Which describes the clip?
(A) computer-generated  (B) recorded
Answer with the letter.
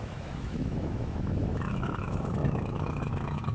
A